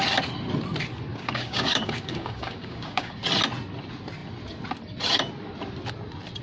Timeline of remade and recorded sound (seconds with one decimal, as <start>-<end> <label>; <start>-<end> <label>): 0.0-1.1 recorded; 1.1-3.2 remade; 3.2-6.4 recorded